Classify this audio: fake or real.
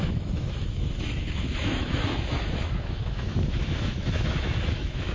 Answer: fake